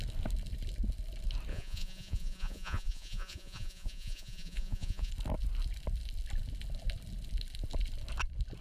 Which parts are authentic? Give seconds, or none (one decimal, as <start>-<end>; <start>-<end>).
0.0-1.5; 5.1-8.6